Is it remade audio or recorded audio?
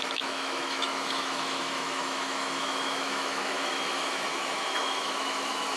remade